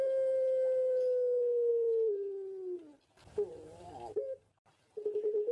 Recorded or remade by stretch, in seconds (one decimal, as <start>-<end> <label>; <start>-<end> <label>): 0.0-5.5 recorded

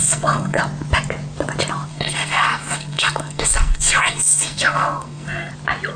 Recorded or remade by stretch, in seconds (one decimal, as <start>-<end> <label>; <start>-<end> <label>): 0.0-0.6 remade; 0.6-1.9 recorded; 1.9-5.5 remade; 5.5-6.0 recorded

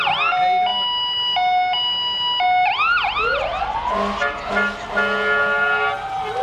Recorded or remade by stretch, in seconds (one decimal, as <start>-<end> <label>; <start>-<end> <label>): 0.0-6.4 recorded

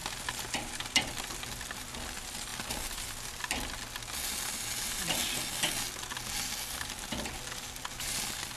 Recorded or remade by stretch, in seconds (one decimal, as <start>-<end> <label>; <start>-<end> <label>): 0.0-8.6 recorded

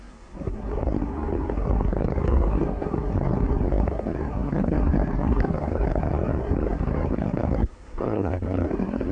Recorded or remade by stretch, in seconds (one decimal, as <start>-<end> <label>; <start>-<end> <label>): 0.0-9.1 remade

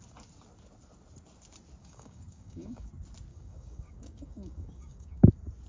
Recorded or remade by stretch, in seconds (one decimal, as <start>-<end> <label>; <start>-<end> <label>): 0.0-1.8 recorded; 1.8-2.9 remade; 2.9-3.3 recorded; 3.3-5.3 remade; 5.3-5.7 recorded